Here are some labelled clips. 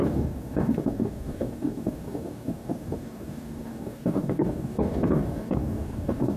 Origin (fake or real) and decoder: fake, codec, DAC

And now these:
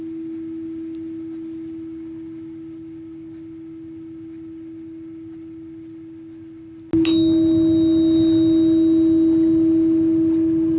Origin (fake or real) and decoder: real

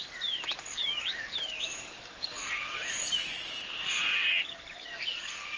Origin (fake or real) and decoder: fake, codec, DAC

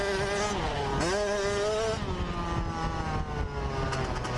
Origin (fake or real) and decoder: real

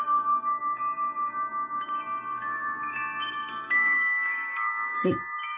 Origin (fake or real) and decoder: fake, codec, DAC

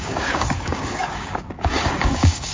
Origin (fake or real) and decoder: fake, codec, DAC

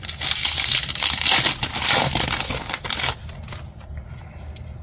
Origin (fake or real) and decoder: real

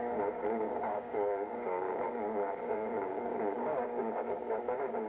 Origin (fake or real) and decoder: fake, codec, DAC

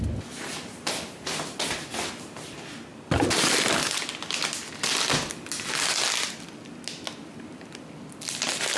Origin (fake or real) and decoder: real